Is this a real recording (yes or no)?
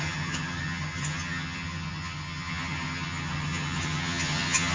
no